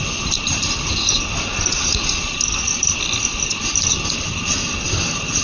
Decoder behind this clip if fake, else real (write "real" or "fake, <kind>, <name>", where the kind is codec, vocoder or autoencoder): real